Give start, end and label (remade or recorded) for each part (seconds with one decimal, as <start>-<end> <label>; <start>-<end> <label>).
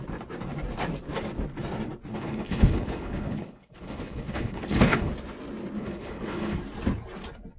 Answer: 0.0-2.1 recorded; 2.1-5.1 remade; 5.1-5.8 recorded; 5.8-6.6 remade; 6.6-7.6 recorded